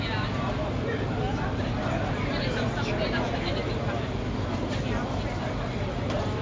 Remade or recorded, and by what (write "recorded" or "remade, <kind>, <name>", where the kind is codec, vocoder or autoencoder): recorded